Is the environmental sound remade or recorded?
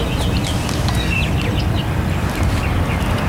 recorded